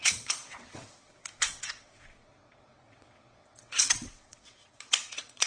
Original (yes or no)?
no